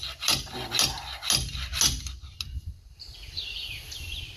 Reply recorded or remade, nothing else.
recorded